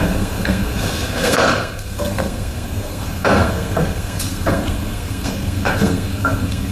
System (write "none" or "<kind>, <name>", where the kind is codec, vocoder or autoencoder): codec, SNAC